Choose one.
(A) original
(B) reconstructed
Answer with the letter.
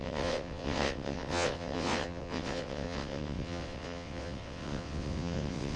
B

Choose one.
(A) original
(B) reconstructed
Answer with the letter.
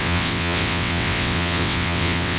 B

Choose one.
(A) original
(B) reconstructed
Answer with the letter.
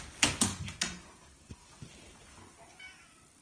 A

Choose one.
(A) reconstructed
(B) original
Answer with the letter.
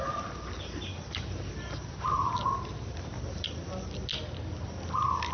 B